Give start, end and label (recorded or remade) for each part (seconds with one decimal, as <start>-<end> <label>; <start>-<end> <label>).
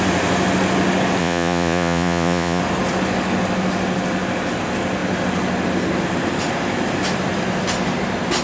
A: 0.0-1.2 recorded; 1.2-2.6 remade; 2.6-8.4 recorded